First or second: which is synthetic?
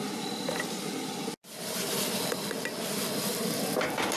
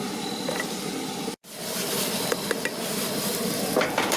second